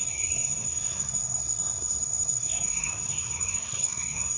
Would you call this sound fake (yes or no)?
yes